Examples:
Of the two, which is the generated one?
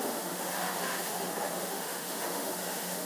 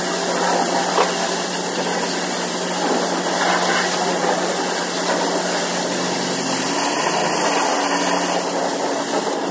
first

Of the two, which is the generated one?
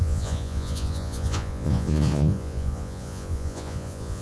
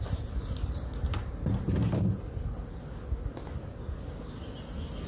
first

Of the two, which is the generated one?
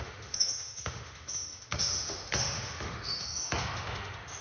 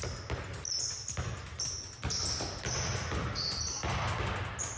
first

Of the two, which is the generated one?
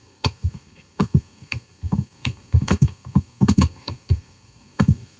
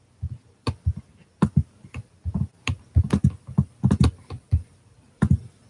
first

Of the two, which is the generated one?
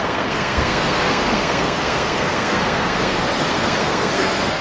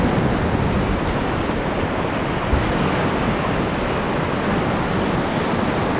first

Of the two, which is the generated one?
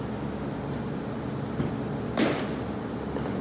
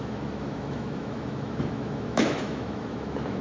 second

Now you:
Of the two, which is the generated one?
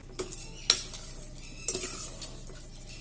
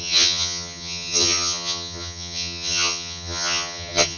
second